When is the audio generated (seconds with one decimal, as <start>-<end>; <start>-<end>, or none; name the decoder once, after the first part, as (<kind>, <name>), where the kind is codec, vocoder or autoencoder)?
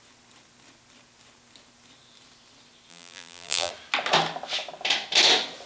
2.9-3.7 (vocoder, BigVGAN v2)